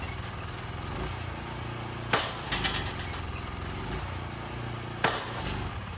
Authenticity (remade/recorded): recorded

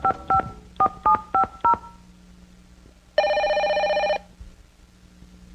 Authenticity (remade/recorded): recorded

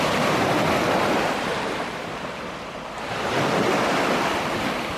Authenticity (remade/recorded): recorded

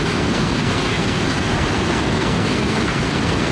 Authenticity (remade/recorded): remade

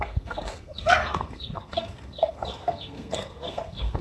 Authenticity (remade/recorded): remade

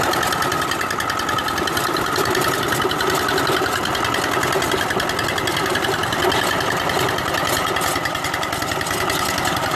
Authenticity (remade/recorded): recorded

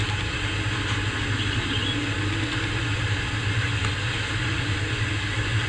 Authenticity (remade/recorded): recorded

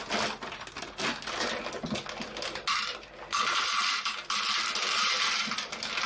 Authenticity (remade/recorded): recorded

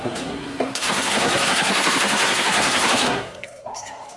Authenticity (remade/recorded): remade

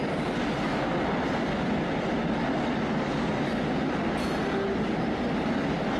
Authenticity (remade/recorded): recorded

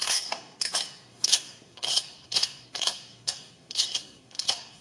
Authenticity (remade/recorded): remade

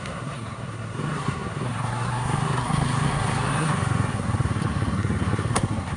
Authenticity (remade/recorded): remade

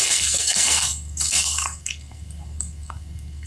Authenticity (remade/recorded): remade